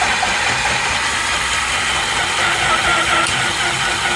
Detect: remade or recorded recorded